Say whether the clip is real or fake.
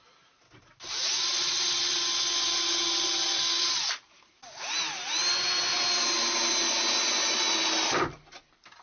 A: real